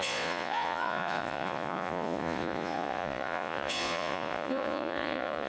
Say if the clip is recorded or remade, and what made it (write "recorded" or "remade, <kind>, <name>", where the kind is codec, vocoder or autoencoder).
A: remade, vocoder, Vocos